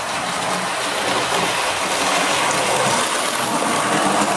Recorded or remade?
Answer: recorded